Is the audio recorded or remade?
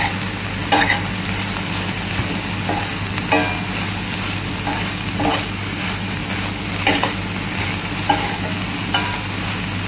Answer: recorded